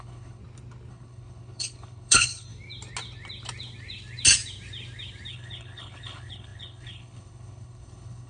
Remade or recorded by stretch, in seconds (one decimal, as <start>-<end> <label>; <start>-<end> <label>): 0.0-0.4 remade; 0.4-0.9 recorded; 0.9-2.5 remade; 2.5-5.3 recorded; 5.3-8.3 remade